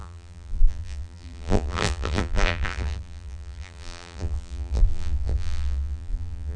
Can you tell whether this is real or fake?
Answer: fake